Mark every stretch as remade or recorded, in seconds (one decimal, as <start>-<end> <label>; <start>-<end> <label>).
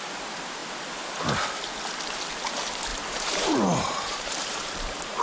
0.0-2.9 recorded; 2.9-5.2 remade